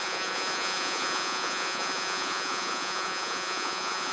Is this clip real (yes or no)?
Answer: no